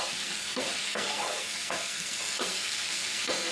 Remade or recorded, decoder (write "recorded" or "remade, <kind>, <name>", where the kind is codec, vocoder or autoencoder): remade, codec, SNAC